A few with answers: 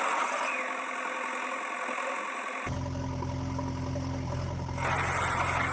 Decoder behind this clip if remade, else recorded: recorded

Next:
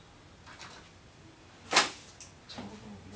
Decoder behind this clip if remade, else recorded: recorded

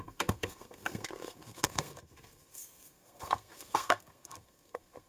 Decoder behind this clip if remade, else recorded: remade, codec, SNAC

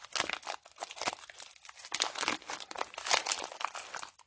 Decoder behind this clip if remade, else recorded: recorded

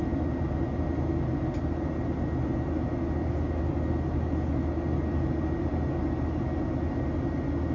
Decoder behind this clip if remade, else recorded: recorded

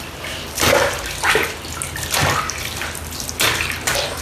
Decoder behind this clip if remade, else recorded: recorded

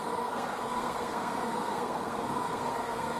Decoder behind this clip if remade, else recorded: remade, codec, SNAC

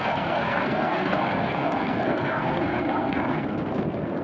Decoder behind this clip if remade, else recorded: remade, codec, SNAC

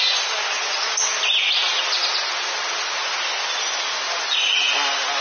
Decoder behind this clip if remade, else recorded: recorded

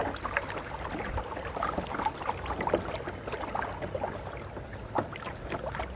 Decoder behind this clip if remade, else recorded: recorded